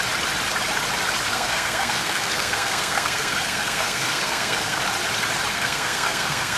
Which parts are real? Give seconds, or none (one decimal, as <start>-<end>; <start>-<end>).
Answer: 0.0-1.3; 4.8-5.5